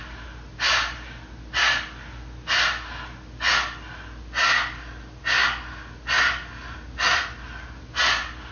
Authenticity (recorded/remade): recorded